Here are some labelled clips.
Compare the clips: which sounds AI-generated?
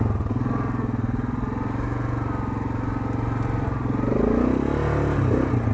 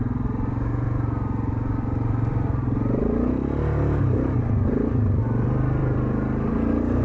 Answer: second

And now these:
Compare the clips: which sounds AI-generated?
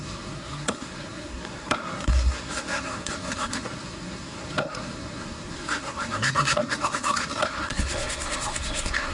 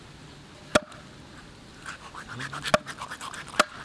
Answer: first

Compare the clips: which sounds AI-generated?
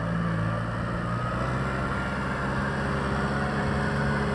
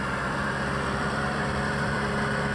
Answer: second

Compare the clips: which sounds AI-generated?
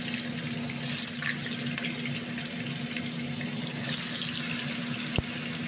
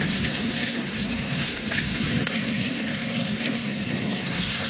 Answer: second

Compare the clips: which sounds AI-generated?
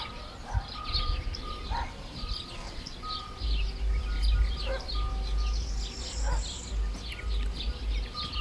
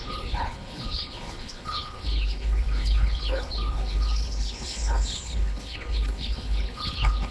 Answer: second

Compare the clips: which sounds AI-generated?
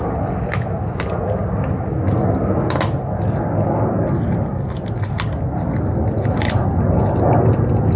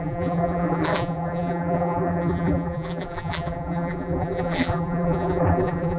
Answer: second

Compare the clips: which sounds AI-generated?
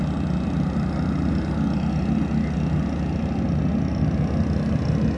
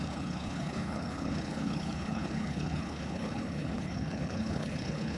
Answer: second